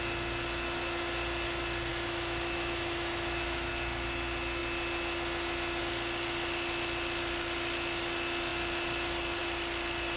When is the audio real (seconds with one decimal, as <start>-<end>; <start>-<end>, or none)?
0.0-1.9; 3.7-10.2